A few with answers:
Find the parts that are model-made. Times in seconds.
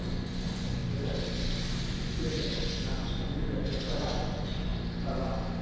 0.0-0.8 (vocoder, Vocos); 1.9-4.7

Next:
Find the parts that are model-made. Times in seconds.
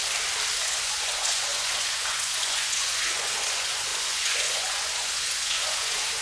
0.6-6.2 (vocoder, Vocos)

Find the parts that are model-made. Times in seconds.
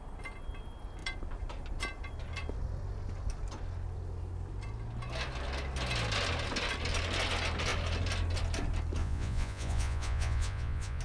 9.0-11.0 (vocoder, Vocos)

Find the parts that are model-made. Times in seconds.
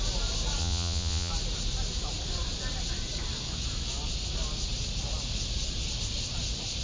0.6-1.3 (vocoder, Vocos)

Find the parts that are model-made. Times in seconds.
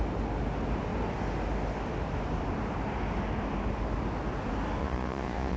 4.8-5.6 (vocoder, Vocos)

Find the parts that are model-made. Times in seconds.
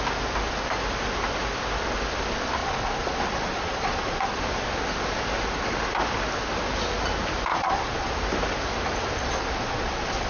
2.6-4.4 (vocoder, Vocos); 7.5-8.1; 9.2-10.3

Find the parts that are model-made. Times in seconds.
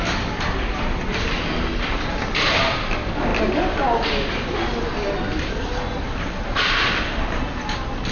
none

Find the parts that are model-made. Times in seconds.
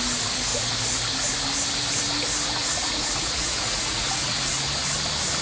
2.6-4.5 (vocoder, Vocos)